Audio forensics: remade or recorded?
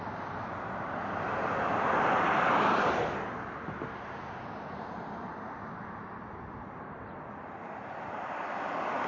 recorded